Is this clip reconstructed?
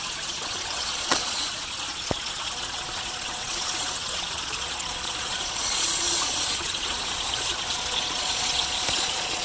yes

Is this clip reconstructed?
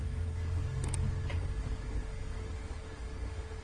yes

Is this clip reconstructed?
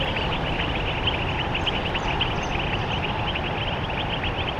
no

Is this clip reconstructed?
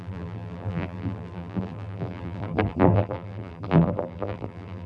yes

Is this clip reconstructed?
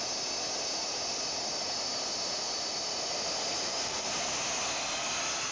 no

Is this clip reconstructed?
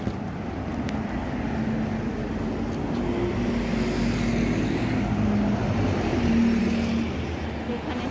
no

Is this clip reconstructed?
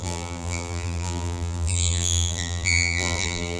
yes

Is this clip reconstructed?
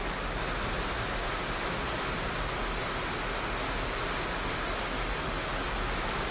no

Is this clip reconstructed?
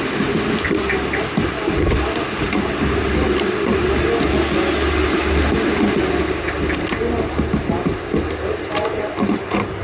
no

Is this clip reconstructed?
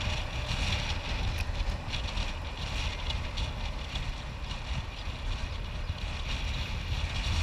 no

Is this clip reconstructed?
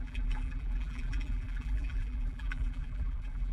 yes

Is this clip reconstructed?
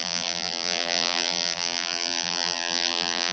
yes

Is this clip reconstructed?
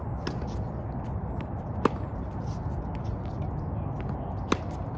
no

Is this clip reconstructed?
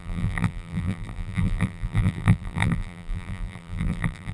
yes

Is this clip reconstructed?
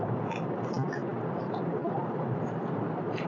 yes